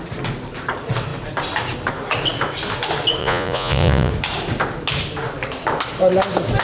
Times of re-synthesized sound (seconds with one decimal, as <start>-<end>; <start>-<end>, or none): 3.2-4.1